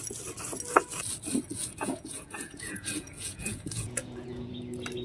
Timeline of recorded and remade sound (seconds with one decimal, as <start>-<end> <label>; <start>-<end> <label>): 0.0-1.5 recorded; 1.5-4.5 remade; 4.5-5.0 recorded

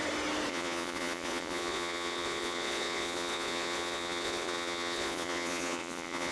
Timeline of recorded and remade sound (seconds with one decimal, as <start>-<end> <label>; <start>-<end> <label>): 0.0-0.5 recorded; 0.5-6.3 remade

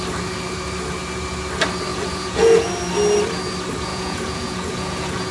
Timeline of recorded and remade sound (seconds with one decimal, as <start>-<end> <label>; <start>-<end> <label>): 0.0-1.9 recorded; 1.9-2.7 remade; 2.7-3.9 recorded; 3.9-5.3 remade

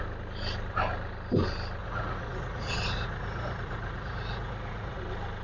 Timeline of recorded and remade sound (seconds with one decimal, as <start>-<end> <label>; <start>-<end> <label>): 0.0-1.8 recorded; 1.8-5.0 remade; 5.0-5.4 recorded

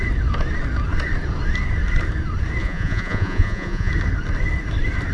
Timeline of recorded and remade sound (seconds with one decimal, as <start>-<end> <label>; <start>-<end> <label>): 0.0-2.6 recorded; 2.6-3.9 remade; 3.9-5.1 recorded

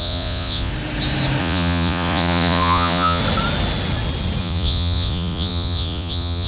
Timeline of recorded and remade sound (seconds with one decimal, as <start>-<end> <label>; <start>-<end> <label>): 0.0-0.7 remade; 0.7-1.4 recorded; 1.4-3.2 remade; 3.2-4.4 recorded; 4.4-6.5 remade

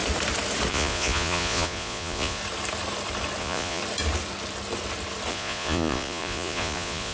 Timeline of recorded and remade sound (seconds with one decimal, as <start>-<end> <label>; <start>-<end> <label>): 0.0-0.7 recorded; 0.7-2.4 remade; 2.4-3.4 recorded; 3.4-3.8 remade; 3.8-5.3 recorded; 5.3-7.1 remade